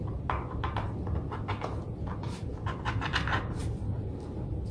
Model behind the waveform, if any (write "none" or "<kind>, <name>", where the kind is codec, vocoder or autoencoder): none